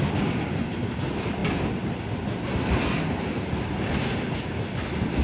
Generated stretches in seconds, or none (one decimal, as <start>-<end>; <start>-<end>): none